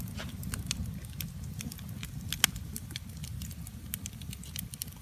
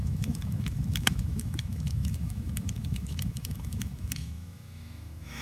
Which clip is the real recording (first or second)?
first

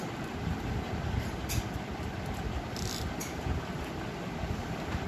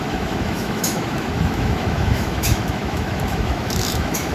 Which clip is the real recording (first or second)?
first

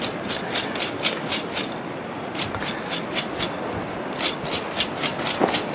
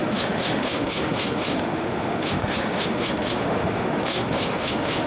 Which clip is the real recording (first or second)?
first